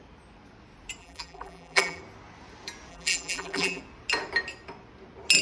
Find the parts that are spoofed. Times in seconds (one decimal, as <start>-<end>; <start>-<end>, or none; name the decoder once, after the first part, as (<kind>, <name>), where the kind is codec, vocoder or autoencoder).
1.0-2.0 (vocoder, BigVGAN v2); 2.9-3.8